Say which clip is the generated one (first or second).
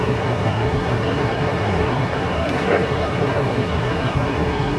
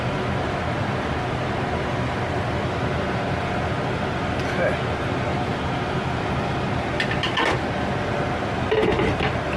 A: first